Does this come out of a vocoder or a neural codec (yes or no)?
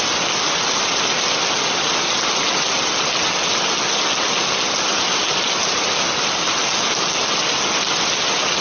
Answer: no